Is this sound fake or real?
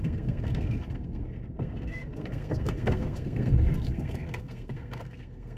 fake